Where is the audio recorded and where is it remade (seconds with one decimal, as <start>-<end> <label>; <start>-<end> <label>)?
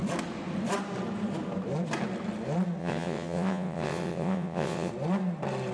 0.0-2.8 recorded; 2.8-4.9 remade; 4.9-5.7 recorded